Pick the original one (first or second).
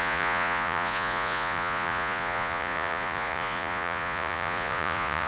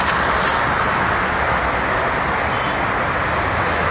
second